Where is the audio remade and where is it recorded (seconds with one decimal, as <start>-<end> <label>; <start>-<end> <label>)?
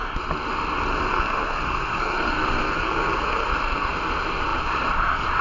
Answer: 0.0-1.1 recorded; 1.1-3.9 remade; 3.9-5.4 recorded